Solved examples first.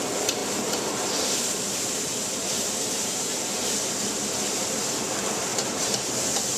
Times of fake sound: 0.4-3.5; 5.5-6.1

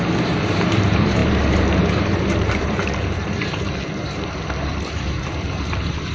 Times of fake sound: 0.0-6.1

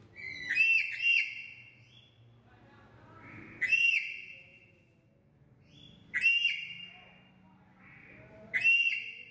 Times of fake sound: none

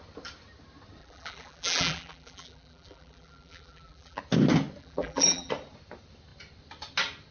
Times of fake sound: 1.0-4.2; 4.8-5.5

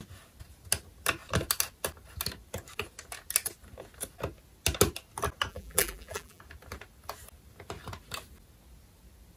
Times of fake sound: 5.5-6.4

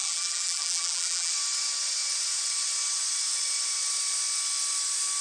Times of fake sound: 0.0-1.3

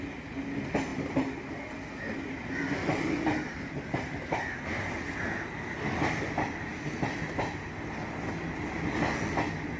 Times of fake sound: none